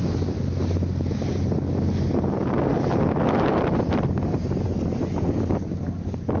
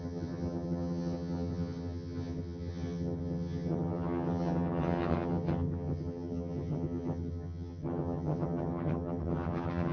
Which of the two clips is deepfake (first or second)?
second